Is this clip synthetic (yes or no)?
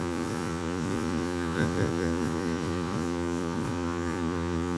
yes